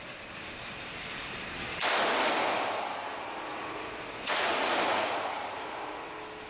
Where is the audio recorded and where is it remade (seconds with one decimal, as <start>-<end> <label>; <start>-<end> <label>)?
0.0-3.5 recorded; 3.5-6.1 remade; 6.1-6.5 recorded